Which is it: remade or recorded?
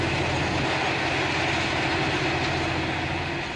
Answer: recorded